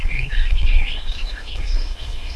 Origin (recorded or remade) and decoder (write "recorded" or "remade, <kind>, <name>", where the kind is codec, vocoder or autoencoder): remade, codec, SNAC